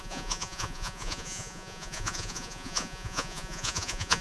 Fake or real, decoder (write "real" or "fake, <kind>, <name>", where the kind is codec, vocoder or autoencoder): fake, vocoder, Vocos